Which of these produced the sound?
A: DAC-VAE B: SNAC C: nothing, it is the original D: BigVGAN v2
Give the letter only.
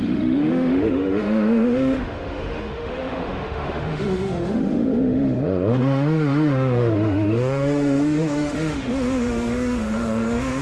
A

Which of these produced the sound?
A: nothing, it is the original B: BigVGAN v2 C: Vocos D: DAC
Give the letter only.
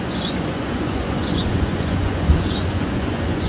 C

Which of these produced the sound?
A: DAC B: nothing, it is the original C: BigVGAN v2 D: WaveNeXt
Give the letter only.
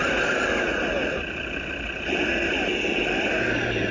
B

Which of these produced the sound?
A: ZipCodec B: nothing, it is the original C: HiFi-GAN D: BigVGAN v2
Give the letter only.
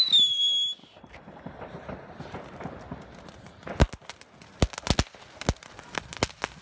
B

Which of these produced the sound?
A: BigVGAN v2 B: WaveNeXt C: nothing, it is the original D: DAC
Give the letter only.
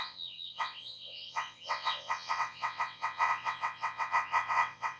B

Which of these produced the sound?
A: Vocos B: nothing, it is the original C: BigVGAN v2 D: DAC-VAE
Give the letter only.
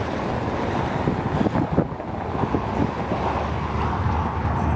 B